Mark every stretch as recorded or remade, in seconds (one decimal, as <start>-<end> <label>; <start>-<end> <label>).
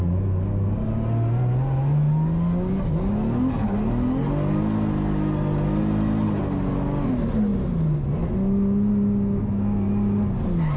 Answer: 0.0-10.8 recorded